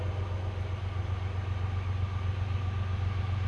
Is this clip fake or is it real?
real